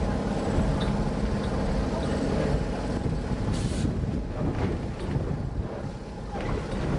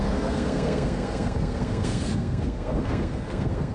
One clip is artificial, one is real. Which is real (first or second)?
first